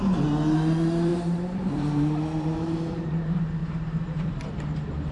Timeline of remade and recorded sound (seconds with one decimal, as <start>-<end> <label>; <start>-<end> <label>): 0.0-1.1 recorded; 1.1-3.0 remade; 3.0-3.6 recorded; 3.6-4.3 remade; 4.3-5.1 recorded